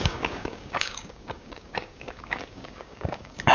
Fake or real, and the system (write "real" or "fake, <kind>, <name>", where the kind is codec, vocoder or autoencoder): fake, codec, DAC